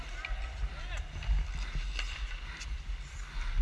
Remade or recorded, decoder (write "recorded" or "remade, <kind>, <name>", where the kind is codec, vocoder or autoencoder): recorded